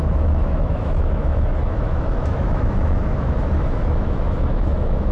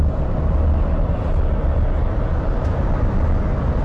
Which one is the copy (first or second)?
first